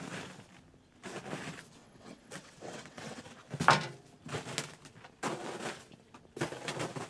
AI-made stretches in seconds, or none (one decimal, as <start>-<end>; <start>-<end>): 1.8-3.2